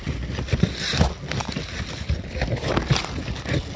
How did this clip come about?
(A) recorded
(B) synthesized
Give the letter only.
A